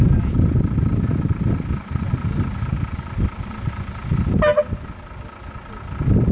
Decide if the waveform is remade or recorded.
recorded